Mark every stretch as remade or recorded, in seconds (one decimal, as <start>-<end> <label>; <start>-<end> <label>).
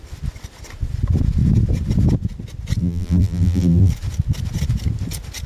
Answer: 0.0-2.8 recorded; 2.8-3.9 remade; 3.9-5.5 recorded